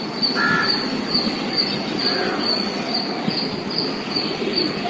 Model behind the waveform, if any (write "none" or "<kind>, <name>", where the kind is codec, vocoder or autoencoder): none